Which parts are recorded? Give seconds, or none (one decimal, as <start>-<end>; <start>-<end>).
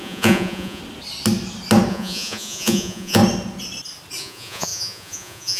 0.8-1.9; 3.2-4.2